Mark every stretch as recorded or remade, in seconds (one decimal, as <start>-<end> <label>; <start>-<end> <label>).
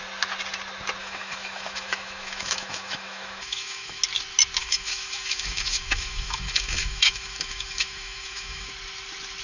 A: 0.0-1.0 recorded; 1.0-4.0 remade; 4.0-4.6 recorded; 4.6-8.7 remade; 8.7-9.4 recorded